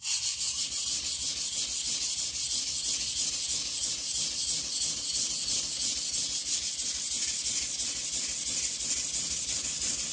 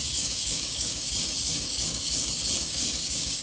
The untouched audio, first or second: first